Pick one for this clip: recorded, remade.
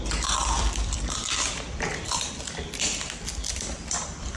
remade